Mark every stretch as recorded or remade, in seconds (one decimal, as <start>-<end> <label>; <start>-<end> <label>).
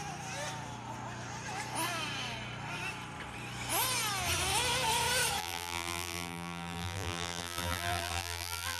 0.0-5.4 recorded; 5.4-8.8 remade